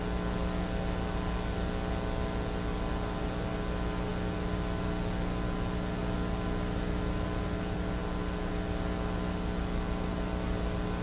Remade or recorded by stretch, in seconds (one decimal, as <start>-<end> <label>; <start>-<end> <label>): 0.0-11.0 recorded